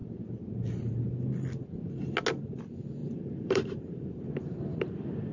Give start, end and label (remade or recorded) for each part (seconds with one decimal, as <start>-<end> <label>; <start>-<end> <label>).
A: 0.0-3.0 recorded; 3.0-5.3 remade